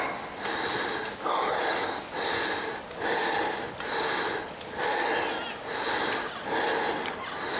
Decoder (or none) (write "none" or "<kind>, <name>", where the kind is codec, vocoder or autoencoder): none